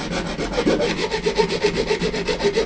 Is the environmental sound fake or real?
real